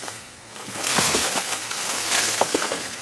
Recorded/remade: remade